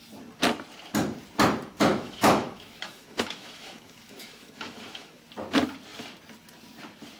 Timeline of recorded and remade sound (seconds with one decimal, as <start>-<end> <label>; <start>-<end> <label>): 0.0-1.9 recorded; 1.9-5.2 remade; 5.2-7.2 recorded